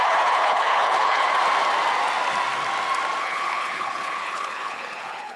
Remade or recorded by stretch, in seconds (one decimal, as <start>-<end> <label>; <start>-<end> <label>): 0.0-1.3 remade; 1.3-3.2 recorded; 3.2-5.4 remade

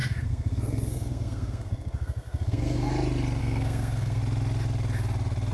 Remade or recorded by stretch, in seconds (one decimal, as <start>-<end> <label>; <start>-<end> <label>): 0.0-2.9 remade; 2.9-3.4 recorded; 3.4-4.2 remade; 4.2-5.5 recorded

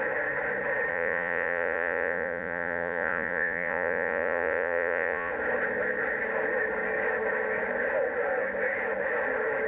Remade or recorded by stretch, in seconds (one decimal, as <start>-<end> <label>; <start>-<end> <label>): 0.0-0.9 recorded; 0.9-5.3 remade; 5.3-9.7 recorded

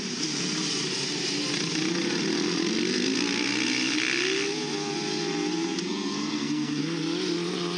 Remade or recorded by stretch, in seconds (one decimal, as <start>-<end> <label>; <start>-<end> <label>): 0.0-5.8 recorded; 5.8-6.8 remade; 6.8-7.8 recorded

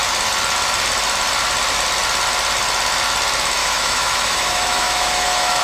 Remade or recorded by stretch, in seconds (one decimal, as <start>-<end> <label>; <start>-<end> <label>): 0.0-3.6 recorded; 3.6-5.6 remade

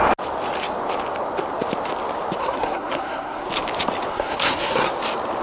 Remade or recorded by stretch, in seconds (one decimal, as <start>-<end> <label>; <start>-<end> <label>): 0.0-2.4 recorded; 2.4-3.5 remade; 3.5-4.1 recorded; 4.1-4.9 remade; 4.9-5.4 recorded

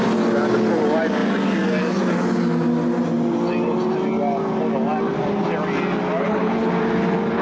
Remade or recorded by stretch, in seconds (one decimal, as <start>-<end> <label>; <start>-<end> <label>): 0.0-6.2 recorded; 6.2-6.7 remade; 6.7-7.4 recorded